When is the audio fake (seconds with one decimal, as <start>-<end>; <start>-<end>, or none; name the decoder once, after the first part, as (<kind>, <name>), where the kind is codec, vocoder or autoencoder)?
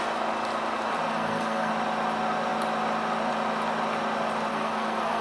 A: 1.1-1.7 (codec, SNAC); 4.5-5.2